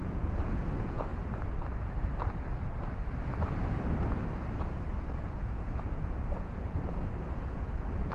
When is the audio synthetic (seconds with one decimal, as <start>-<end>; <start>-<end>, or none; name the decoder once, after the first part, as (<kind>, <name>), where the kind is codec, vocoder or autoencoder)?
0.0-1.1 (vocoder, Vocos); 5.0-8.1